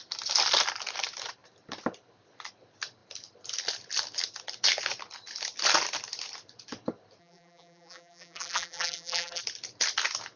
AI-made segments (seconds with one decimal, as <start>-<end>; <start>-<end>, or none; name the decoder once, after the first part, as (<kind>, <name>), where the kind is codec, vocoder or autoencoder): 7.2-9.4 (vocoder, BigVGAN v2)